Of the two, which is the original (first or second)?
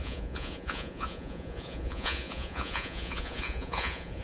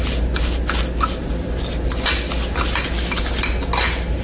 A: second